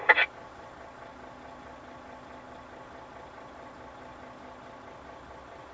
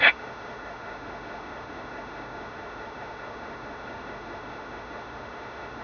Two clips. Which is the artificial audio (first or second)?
second